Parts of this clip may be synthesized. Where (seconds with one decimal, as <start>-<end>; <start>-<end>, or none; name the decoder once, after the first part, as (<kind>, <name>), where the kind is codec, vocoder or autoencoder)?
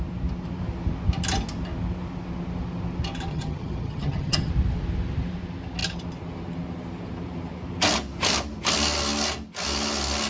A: 3.3-4.5 (vocoder, HiFi-GAN)